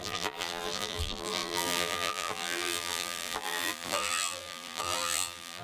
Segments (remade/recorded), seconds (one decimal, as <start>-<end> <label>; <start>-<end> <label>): 0.0-5.6 remade